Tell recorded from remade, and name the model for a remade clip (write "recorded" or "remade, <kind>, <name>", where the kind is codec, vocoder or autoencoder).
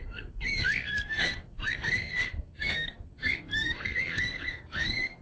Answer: remade, codec, SNAC